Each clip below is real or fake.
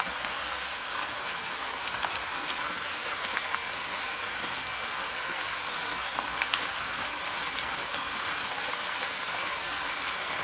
fake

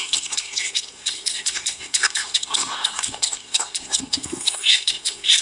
fake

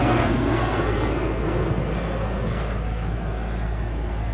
fake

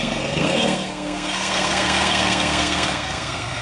fake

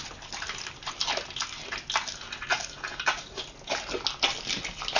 real